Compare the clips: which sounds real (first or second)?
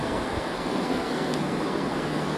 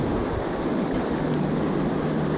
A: second